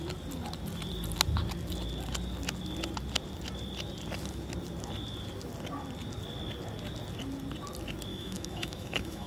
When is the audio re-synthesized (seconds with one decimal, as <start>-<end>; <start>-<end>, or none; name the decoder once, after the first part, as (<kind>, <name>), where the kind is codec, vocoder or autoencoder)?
8.1-9.3 (autoencoder, DAC-VAE)